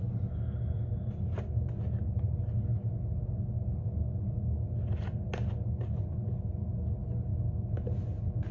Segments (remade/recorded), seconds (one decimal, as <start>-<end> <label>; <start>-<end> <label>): 0.0-8.5 recorded